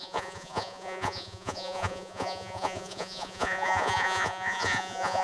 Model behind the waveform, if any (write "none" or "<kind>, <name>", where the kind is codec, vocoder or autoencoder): vocoder, Vocos